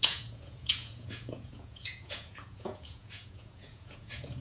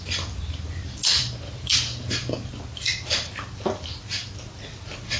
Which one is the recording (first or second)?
second